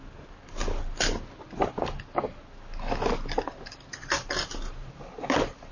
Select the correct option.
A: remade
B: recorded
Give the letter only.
B